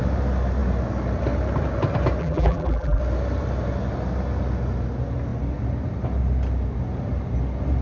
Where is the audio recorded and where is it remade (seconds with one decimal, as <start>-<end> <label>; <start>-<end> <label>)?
0.0-2.2 recorded; 2.2-3.0 remade; 3.0-7.8 recorded